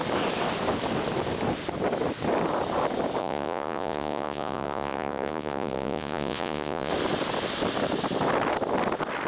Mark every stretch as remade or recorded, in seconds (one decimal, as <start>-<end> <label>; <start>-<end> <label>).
0.0-3.2 recorded; 3.2-6.9 remade; 6.9-9.3 recorded